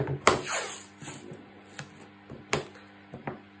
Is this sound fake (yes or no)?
no